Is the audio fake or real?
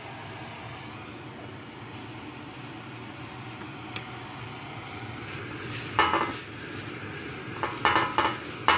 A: real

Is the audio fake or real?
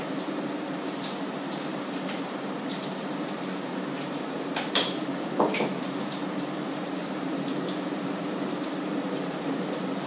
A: fake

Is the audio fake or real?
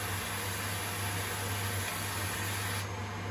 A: real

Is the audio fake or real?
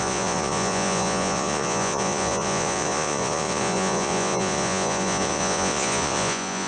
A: fake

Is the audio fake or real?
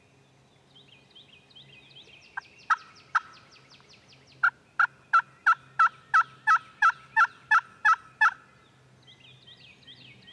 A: real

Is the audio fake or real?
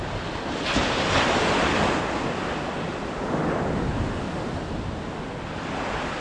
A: real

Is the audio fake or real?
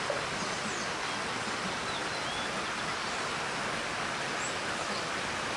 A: real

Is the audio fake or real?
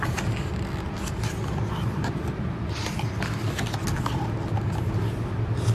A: real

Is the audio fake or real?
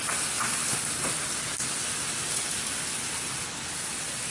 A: real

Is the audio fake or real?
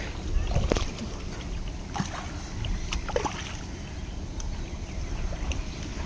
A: real